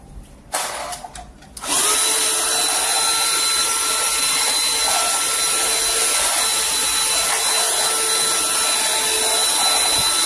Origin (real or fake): real